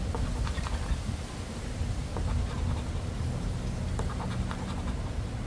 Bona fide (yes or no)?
yes